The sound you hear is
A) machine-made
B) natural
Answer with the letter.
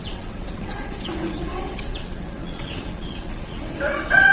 A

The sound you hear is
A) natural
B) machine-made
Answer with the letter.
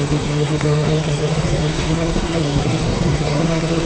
B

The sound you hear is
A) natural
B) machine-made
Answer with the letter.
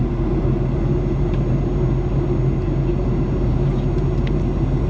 A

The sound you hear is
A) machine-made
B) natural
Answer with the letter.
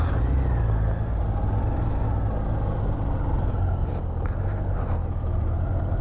B